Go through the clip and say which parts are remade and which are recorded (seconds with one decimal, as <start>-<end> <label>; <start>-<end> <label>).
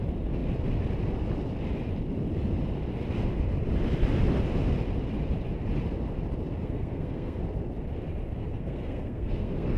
0.0-6.6 recorded; 6.6-7.4 remade; 7.4-8.4 recorded; 8.4-9.8 remade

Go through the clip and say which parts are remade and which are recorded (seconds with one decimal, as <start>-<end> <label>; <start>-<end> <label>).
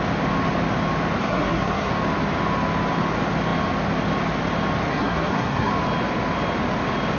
0.0-1.2 recorded; 1.2-1.9 remade; 1.9-4.9 recorded; 4.9-5.7 remade; 5.7-7.2 recorded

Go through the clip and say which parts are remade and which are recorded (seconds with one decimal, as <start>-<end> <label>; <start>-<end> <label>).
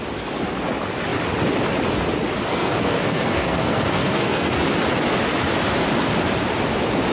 0.0-2.4 recorded; 2.4-4.5 remade; 4.5-7.1 recorded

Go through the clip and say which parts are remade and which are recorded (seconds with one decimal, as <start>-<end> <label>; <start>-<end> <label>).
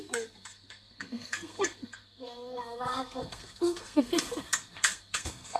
0.0-5.6 remade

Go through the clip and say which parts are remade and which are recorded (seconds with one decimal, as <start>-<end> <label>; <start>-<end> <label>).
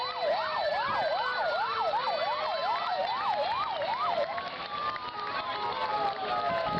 0.0-6.8 recorded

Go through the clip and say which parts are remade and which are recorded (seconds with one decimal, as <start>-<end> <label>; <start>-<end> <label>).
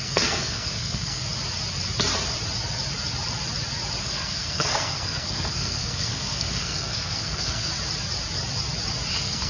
0.0-1.2 remade; 1.2-4.0 recorded; 4.0-7.7 remade; 7.7-9.1 recorded; 9.1-9.5 remade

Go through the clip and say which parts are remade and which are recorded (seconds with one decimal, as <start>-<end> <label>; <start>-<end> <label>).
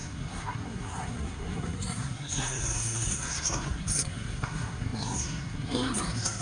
0.0-6.4 remade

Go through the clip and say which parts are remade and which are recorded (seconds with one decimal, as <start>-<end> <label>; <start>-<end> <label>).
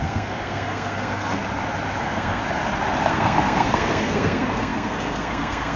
0.0-1.4 remade; 1.4-2.0 recorded; 2.0-2.4 remade; 2.4-3.1 recorded; 3.1-5.8 remade